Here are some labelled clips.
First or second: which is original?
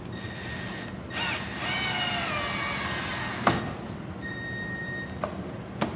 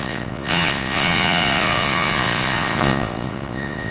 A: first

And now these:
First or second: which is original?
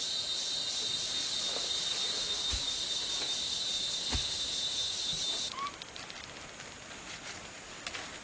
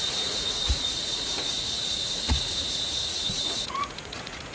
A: first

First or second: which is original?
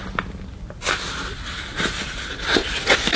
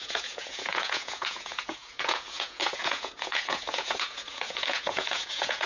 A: first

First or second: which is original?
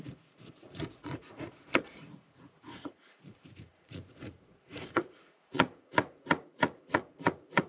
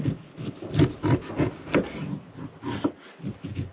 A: second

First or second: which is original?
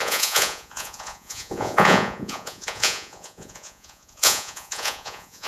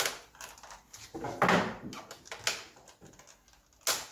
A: second